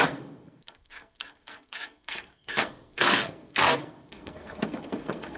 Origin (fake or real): fake